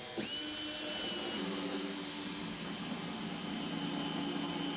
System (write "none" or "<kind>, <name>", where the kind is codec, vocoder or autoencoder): none